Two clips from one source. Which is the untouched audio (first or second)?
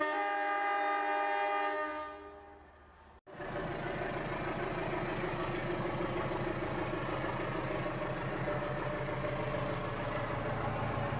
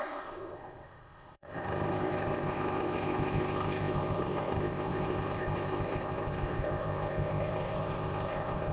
first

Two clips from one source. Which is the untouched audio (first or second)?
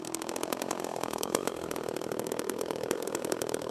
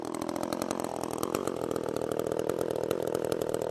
second